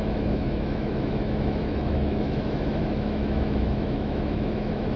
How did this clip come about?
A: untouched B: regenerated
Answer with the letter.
B